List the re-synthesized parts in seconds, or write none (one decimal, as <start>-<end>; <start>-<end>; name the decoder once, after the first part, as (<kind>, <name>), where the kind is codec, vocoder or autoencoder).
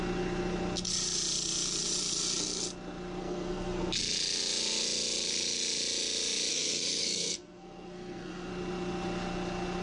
3.2-3.8 (codec, SNAC); 6.5-8.5